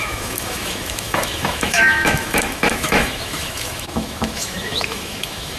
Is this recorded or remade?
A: remade